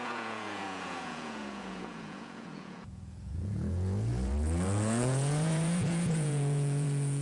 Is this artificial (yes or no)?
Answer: yes